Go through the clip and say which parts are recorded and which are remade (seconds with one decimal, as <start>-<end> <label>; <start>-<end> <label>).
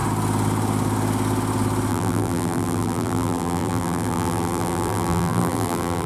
0.0-1.9 recorded; 1.9-6.1 remade